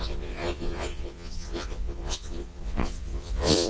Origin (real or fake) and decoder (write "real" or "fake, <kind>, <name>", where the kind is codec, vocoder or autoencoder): fake, vocoder, Vocos